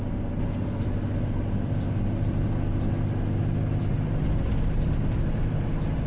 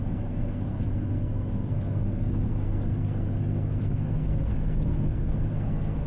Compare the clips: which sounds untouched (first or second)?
first